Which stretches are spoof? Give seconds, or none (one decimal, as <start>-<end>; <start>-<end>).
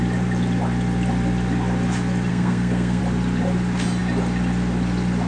2.3-3.0